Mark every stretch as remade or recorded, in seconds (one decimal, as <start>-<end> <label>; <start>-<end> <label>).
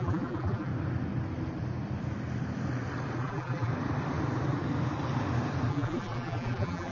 0.0-0.7 remade; 0.7-3.2 recorded; 3.2-3.7 remade; 3.7-5.7 recorded; 5.7-6.9 remade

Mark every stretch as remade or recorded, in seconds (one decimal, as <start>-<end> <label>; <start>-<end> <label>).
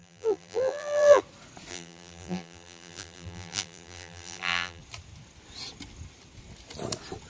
0.0-1.2 remade; 1.2-1.7 recorded; 1.7-4.8 remade; 4.8-7.3 recorded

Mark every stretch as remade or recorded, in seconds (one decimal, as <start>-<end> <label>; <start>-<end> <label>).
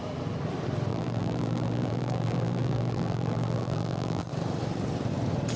0.0-0.9 recorded; 0.9-4.3 remade; 4.3-5.6 recorded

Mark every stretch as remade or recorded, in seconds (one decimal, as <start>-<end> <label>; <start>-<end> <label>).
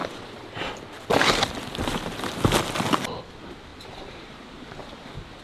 0.0-3.7 recorded; 3.7-5.4 remade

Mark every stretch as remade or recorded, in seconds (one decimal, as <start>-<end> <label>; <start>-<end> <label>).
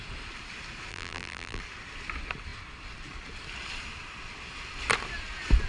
0.0-0.9 recorded; 0.9-1.6 remade; 1.6-5.7 recorded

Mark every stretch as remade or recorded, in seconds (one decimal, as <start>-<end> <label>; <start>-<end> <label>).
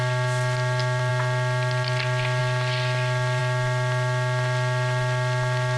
0.0-5.8 recorded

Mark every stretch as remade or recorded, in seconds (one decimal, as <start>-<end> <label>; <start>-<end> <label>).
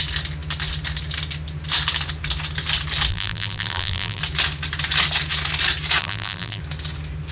0.0-3.1 recorded; 3.1-4.2 remade; 4.2-6.0 recorded; 6.0-6.6 remade; 6.6-7.3 recorded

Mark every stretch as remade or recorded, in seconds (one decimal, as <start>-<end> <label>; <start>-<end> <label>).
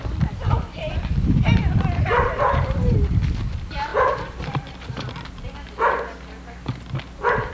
0.0-0.8 recorded; 0.8-3.0 remade; 3.0-3.9 recorded; 3.9-5.1 remade; 5.1-7.5 recorded